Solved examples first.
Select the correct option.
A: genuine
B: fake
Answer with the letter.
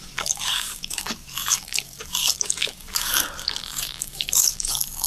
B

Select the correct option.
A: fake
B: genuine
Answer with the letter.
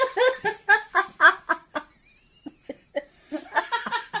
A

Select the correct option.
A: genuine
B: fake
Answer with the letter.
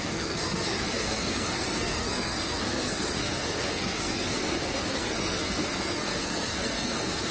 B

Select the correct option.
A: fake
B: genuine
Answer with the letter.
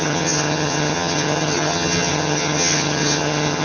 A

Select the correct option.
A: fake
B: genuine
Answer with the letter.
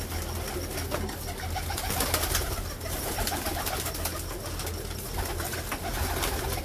B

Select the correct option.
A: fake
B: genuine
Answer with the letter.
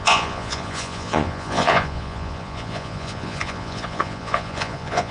A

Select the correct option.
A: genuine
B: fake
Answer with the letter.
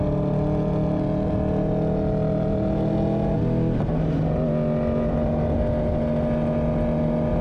A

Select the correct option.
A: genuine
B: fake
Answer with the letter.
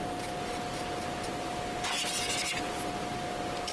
A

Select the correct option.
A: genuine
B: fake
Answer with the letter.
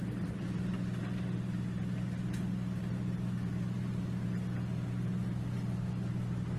A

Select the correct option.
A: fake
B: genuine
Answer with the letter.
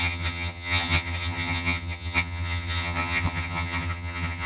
A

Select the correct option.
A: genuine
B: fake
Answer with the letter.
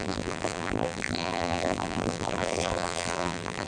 B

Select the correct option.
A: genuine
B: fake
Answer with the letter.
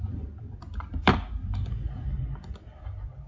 B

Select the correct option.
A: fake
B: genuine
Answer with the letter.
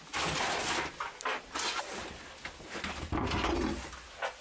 B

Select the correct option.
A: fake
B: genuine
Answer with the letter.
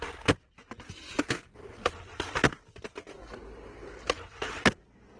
B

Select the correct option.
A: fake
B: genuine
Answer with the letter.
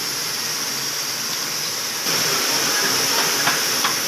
A